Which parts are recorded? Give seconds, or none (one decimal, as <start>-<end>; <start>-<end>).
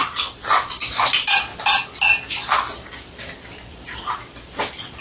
0.0-5.0